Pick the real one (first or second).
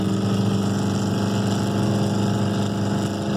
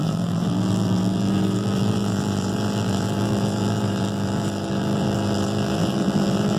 first